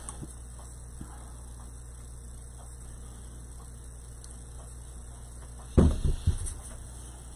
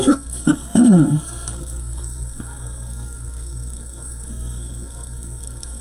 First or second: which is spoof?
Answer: second